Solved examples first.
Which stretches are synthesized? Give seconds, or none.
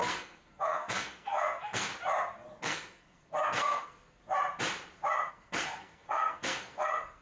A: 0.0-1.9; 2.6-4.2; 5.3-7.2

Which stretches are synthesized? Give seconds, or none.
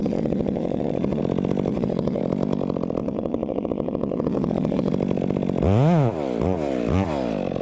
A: 0.0-1.2; 1.7-2.2; 3.0-4.9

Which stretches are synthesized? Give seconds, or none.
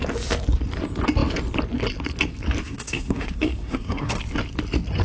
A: 2.6-4.1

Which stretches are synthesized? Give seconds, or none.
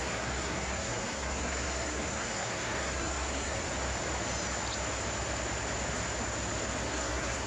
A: 0.0-3.6; 6.8-7.5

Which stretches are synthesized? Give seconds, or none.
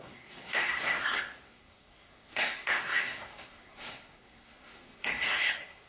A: 0.0-5.9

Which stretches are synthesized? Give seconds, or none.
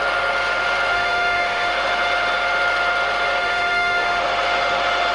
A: 0.9-1.7; 3.4-4.2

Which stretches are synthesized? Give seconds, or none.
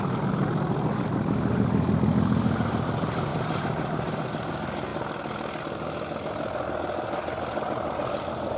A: 3.3-4.2